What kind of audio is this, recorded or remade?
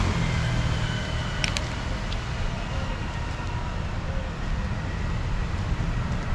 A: recorded